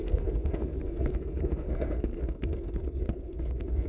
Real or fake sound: fake